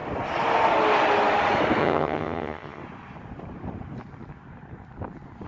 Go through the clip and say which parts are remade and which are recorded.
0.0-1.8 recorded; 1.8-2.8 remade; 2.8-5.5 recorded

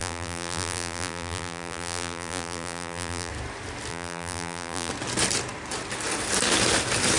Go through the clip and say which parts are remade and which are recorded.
0.0-3.3 remade; 3.3-3.9 recorded; 3.9-4.9 remade; 4.9-7.2 recorded

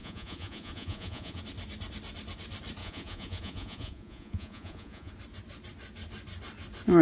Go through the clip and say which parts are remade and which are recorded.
0.0-1.4 remade; 1.4-2.8 recorded; 2.8-5.1 remade; 5.1-7.0 recorded

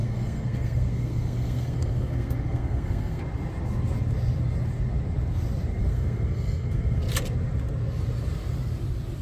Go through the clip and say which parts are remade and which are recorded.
0.0-3.2 remade; 3.2-5.8 recorded; 5.8-7.0 remade; 7.0-9.2 recorded